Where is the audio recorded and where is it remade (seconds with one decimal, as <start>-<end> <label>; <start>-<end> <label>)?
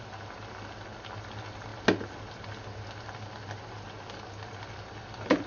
0.0-5.5 recorded